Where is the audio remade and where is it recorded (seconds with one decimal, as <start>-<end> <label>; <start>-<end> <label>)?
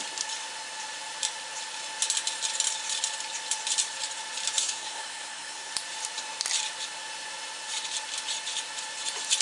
0.0-4.6 recorded; 4.6-5.7 remade; 5.7-9.4 recorded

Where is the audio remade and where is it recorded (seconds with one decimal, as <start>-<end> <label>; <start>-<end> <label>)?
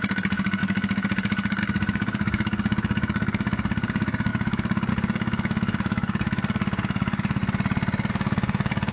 0.0-7.4 remade; 7.4-8.1 recorded; 8.1-8.9 remade